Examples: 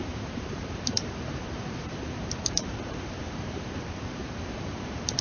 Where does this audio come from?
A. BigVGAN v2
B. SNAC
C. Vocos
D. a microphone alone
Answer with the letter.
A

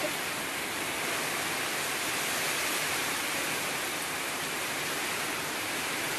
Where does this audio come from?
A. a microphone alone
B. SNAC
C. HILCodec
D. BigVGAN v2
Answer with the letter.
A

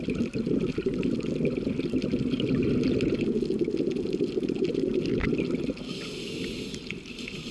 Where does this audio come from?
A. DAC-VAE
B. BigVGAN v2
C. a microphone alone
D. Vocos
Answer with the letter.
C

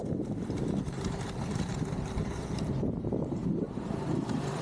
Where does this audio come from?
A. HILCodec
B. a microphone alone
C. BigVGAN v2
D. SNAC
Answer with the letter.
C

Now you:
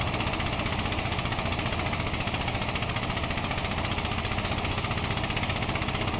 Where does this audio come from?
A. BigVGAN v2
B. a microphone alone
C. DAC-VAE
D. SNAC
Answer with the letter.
B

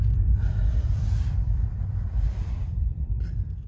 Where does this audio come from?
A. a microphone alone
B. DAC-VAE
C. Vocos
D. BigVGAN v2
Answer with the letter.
D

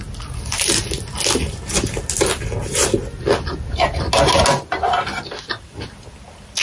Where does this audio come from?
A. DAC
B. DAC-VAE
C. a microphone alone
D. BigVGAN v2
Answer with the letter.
C